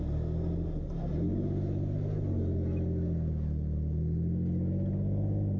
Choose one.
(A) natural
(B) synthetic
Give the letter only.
A